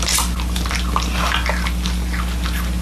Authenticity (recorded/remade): recorded